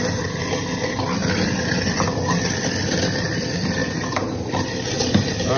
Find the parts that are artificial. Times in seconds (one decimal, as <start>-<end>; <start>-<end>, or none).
none